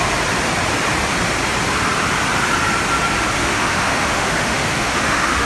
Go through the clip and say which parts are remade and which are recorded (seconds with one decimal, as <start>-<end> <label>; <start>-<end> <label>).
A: 0.0-3.4 recorded; 3.4-5.5 remade